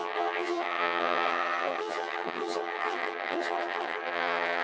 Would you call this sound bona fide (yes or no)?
no